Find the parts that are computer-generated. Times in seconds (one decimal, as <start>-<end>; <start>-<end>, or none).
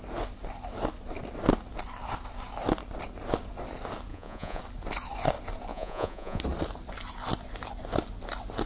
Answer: 4.1-4.6; 5.7-6.4